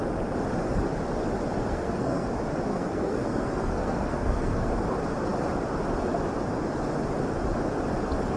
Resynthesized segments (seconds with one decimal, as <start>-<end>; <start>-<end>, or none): 1.6-2.3; 2.7-4.7